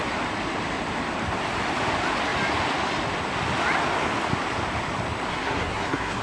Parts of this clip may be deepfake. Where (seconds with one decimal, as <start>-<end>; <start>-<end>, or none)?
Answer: 5.3-6.2